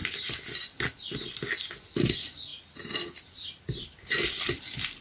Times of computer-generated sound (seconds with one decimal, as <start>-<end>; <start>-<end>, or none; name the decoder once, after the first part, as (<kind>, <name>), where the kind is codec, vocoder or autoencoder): none

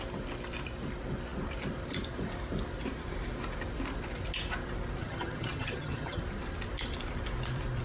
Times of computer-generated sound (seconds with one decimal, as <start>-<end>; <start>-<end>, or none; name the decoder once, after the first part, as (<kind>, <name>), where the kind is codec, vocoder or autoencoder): 5.0-6.2 (vocoder, HiFi-GAN)

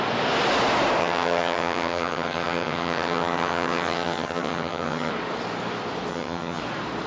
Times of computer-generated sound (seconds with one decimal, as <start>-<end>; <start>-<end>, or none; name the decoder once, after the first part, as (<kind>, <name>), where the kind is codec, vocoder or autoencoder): 1.0-5.1 (vocoder, HiFi-GAN); 6.1-6.6

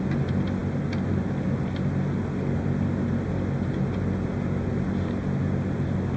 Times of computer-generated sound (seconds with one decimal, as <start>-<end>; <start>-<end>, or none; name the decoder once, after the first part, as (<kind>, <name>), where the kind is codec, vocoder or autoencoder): none

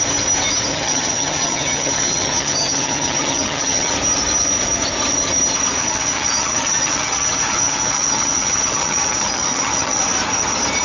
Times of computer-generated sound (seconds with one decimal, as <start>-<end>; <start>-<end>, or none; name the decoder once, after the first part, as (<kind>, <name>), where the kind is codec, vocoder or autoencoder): 0.7-3.9 (vocoder, HiFi-GAN); 5.8-10.0